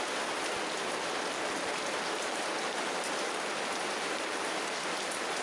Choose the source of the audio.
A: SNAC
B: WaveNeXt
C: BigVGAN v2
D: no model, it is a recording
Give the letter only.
D